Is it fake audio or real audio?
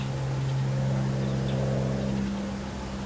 real